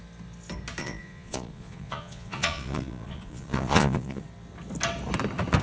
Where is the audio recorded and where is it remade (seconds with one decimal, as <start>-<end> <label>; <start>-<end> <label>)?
0.0-0.8 recorded; 0.8-4.2 remade; 4.2-5.6 recorded